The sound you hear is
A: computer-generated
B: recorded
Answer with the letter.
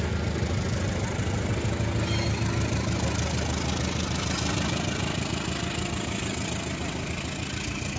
B